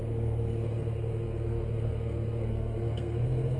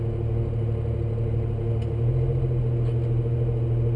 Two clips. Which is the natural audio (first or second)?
second